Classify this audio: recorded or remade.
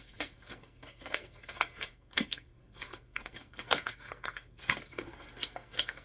remade